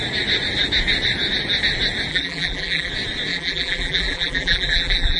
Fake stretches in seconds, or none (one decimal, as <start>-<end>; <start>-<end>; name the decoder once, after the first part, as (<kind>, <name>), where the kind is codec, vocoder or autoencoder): 2.1-2.9 (vocoder, BigVGAN v2); 3.3-5.2